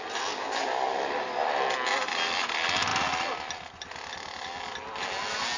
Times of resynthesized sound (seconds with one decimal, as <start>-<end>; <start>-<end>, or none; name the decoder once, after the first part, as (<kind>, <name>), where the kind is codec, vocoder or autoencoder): none